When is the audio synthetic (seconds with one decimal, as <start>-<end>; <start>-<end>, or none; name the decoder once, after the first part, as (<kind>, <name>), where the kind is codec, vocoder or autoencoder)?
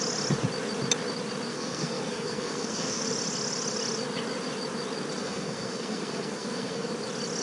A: 1.5-3.0 (codec, SNAC); 5.2-6.9